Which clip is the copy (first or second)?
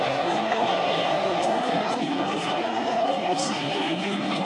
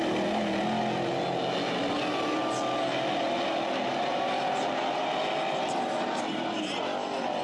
first